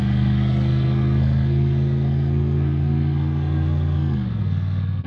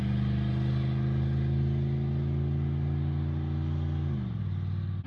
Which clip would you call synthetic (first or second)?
first